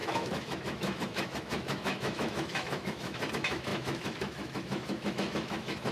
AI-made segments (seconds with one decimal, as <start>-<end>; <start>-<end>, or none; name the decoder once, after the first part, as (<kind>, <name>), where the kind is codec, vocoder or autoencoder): 0.0-5.9 (autoencoder, DAC-VAE)

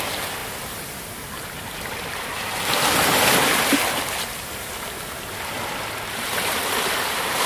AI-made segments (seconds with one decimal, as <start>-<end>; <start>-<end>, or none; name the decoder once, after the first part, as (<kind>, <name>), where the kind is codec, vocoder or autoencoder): none